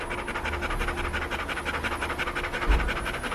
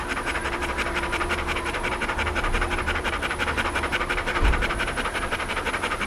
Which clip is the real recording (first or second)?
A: first